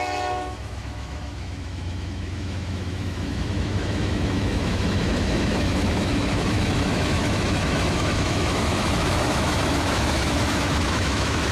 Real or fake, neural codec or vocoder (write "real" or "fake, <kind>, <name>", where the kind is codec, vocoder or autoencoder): fake, autoencoder, DAC-VAE